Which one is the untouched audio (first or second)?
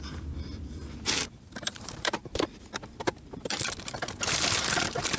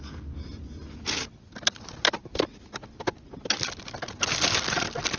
second